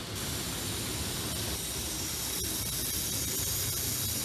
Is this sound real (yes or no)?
yes